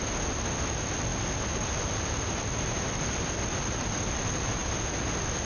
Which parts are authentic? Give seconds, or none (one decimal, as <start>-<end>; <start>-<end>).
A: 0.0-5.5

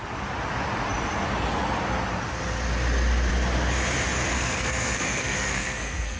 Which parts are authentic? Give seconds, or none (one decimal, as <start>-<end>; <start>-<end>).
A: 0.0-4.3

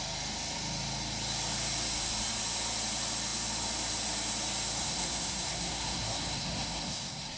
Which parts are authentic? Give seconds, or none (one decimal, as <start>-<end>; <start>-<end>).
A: 0.0-4.8

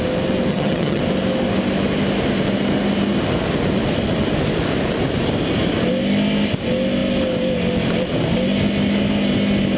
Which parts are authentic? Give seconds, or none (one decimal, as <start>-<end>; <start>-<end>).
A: 0.0-0.5; 1.0-9.8